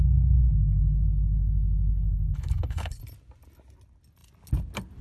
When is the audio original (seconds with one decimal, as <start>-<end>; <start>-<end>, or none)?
3.0-5.0